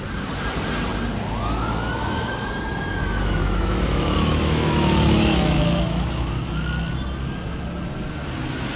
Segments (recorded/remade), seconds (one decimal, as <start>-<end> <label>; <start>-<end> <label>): 0.0-2.0 recorded; 2.0-2.5 remade; 2.5-3.0 recorded; 3.0-6.3 remade; 6.3-8.8 recorded